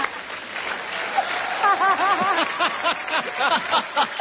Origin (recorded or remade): recorded